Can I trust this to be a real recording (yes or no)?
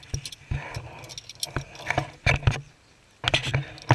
yes